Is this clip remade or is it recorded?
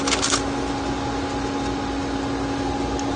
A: recorded